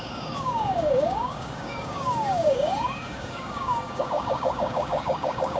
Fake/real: fake